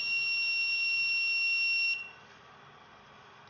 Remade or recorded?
recorded